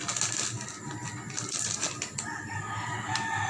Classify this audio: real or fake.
real